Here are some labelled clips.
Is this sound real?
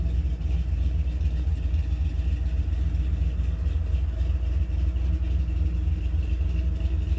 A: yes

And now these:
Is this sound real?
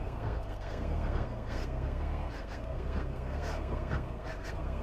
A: no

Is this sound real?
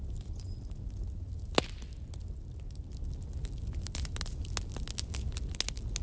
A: yes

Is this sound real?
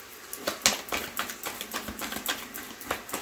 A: yes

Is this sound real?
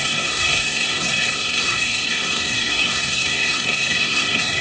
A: no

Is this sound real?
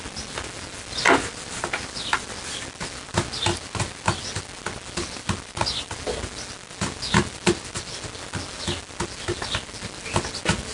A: yes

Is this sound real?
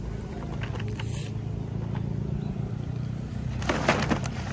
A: yes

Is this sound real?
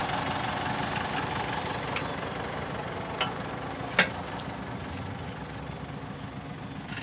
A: yes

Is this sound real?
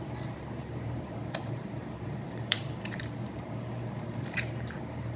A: no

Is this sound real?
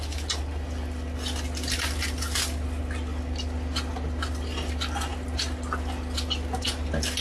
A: yes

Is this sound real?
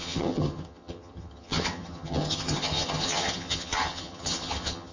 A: no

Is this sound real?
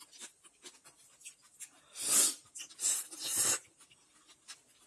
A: yes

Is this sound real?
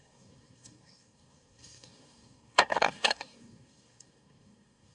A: no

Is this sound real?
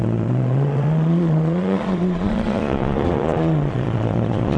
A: no